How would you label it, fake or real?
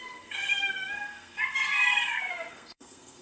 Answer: fake